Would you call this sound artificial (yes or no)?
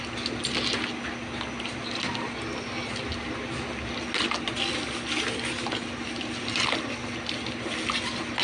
no